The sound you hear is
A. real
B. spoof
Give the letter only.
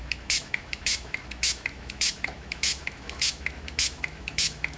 B